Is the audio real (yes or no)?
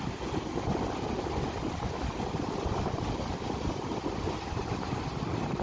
yes